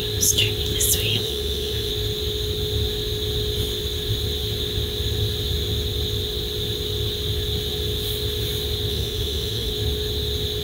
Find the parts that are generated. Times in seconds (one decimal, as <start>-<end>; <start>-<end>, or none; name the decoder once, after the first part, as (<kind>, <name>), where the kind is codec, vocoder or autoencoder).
1.1-1.9 (autoencoder, DAC-VAE); 8.9-9.7